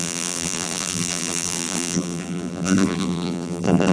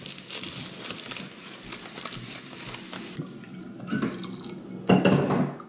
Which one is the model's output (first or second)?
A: first